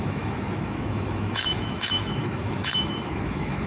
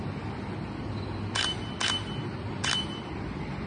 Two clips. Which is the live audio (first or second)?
second